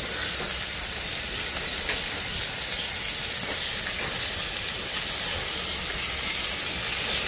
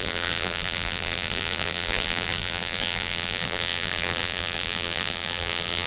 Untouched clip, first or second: first